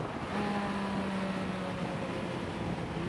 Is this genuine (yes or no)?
yes